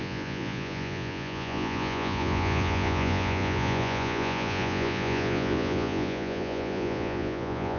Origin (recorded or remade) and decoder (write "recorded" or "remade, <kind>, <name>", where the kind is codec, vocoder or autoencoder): remade, vocoder, Vocos